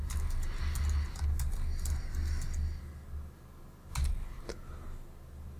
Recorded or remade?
recorded